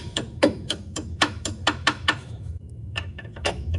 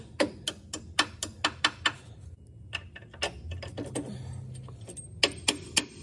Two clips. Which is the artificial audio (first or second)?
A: first